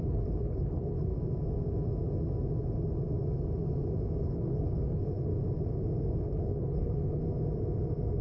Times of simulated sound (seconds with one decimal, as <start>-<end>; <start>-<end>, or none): 0.0-1.1; 4.2-5.3; 6.2-7.2